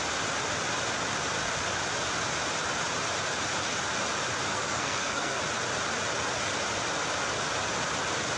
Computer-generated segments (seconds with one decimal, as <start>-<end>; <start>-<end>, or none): 4.5-5.4

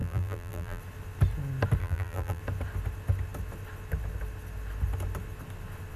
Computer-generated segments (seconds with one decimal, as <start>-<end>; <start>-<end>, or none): 0.0-0.8; 1.8-2.4

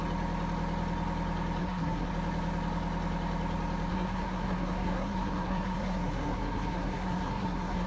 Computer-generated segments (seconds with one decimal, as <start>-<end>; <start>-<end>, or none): 1.6-2.1; 3.9-7.9

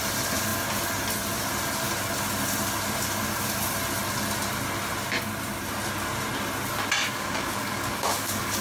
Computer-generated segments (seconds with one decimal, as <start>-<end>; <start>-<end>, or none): 7.0-8.6

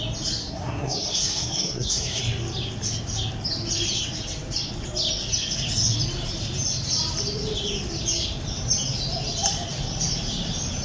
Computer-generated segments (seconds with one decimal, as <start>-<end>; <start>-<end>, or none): 0.4-2.2